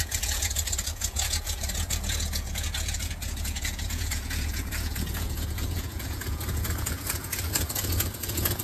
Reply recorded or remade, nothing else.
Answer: remade